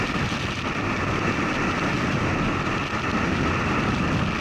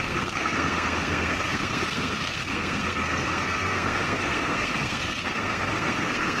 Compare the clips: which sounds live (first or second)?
first